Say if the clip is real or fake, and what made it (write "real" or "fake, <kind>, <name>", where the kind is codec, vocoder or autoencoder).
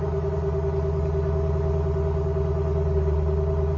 real